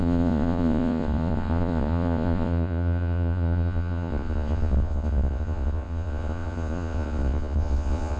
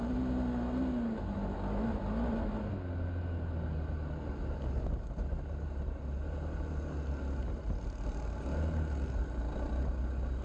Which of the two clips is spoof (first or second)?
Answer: first